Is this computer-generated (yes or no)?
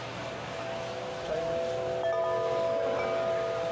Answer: no